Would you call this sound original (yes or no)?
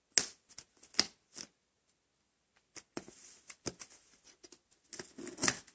yes